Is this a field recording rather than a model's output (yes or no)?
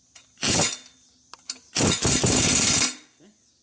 yes